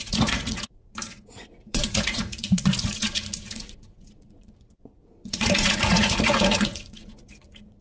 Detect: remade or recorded remade